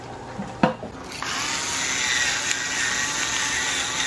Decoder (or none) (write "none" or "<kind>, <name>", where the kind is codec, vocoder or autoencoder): none